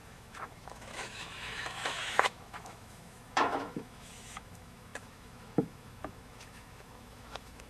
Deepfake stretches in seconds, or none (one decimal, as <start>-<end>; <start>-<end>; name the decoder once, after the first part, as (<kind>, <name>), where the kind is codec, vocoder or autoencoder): 0.0-7.7 (autoencoder, DAC-VAE)